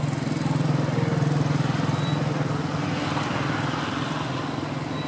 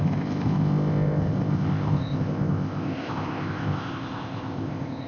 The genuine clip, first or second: first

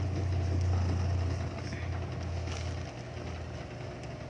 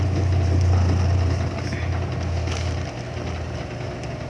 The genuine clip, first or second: first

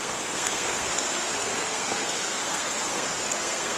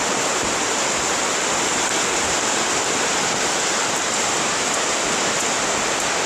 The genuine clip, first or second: second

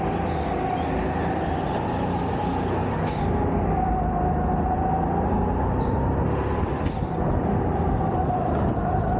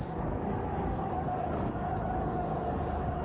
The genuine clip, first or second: first